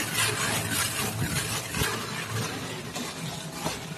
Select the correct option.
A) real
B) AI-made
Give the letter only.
A